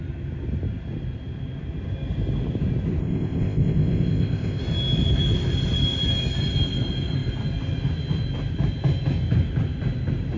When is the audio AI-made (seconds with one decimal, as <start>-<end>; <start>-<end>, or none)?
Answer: 3.0-4.6